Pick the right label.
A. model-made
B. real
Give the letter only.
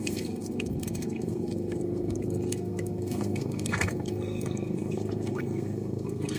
A